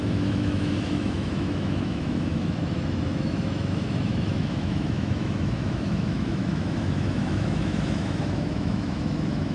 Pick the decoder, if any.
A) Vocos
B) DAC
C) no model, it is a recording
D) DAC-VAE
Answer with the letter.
D